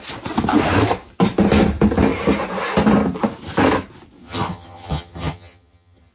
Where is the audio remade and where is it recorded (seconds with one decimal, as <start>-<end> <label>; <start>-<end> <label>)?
0.0-4.2 recorded; 4.2-6.1 remade